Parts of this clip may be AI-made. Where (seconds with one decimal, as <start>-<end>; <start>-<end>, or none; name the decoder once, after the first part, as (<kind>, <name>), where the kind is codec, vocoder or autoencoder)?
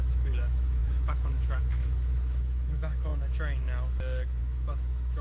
0.0-5.2 (autoencoder, DAC-VAE)